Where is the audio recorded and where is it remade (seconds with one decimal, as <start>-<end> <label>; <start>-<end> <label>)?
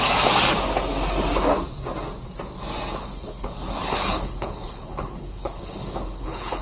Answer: 0.0-2.9 recorded; 2.9-6.6 remade